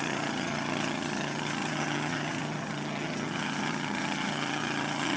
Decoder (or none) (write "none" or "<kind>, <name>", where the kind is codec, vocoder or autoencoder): vocoder, HiFi-GAN